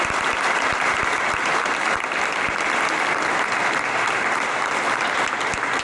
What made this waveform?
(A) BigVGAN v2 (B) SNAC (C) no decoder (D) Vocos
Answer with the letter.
C